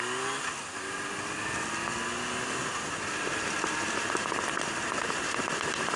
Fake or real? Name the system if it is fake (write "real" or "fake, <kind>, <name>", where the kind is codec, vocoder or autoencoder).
real